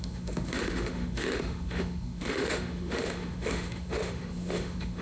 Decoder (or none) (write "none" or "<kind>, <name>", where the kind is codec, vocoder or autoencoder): autoencoder, DAC-VAE